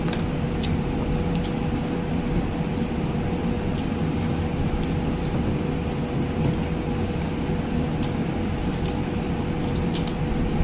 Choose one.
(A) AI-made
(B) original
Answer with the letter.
B